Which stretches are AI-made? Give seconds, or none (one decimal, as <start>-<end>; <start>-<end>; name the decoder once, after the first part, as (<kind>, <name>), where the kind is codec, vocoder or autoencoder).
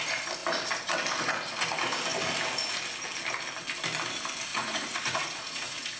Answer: 4.5-6.0 (vocoder, Vocos)